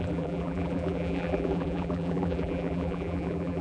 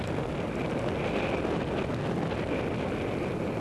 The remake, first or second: first